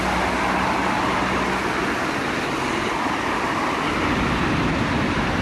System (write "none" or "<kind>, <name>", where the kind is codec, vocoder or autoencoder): none